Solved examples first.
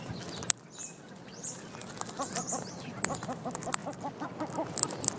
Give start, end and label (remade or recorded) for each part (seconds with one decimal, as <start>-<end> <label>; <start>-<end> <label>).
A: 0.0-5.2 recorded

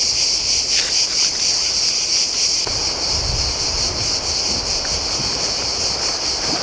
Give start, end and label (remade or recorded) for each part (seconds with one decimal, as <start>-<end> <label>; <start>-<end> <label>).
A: 0.0-6.6 recorded

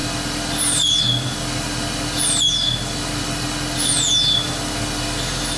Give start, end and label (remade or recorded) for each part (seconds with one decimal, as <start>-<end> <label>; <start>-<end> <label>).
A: 0.0-5.6 recorded

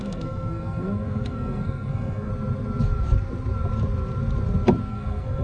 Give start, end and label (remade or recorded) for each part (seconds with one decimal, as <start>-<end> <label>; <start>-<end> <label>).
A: 0.0-2.3 remade; 2.3-4.9 recorded; 4.9-5.4 remade

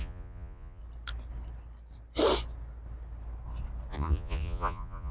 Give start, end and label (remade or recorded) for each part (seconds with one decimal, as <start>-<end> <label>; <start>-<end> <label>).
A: 0.0-0.8 remade; 0.8-3.9 recorded; 3.9-5.1 remade

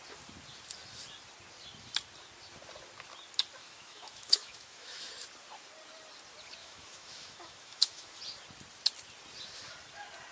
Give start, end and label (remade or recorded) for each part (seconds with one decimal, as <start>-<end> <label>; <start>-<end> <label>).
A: 0.0-3.6 recorded; 3.6-5.1 remade; 5.1-6.6 recorded; 6.6-8.2 remade; 8.2-10.3 recorded